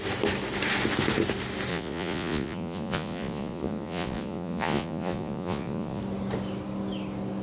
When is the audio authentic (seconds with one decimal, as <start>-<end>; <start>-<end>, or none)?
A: 0.0-1.7; 6.0-7.4